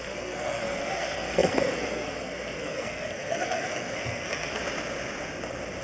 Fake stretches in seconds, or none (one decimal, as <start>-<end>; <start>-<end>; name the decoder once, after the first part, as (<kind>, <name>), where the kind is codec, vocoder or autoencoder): 0.0-4.6 (codec, SNAC)

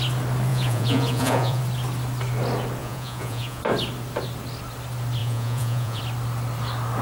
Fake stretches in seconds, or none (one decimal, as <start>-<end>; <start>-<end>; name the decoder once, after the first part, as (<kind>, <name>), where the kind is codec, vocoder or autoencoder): 0.5-1.6 (vocoder, Vocos); 2.8-3.6; 5.2-6.0

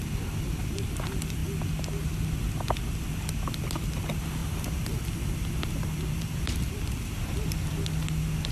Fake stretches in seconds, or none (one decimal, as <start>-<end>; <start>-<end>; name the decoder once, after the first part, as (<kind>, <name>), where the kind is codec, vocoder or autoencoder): 4.4-6.7 (vocoder, BigVGAN v2)

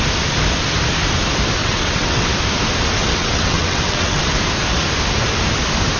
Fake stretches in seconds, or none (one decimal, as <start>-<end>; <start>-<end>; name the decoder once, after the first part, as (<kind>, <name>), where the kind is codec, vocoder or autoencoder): 1.6-2.3 (vocoder, WaveNeXt); 3.0-4.2

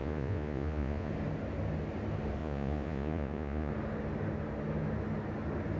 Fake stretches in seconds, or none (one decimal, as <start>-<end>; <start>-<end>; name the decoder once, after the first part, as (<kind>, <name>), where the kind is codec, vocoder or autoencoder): 0.0-1.1 (vocoder, Vocos); 2.4-3.7